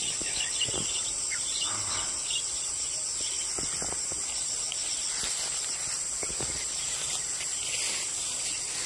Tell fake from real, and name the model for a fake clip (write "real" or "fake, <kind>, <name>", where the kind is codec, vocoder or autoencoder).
real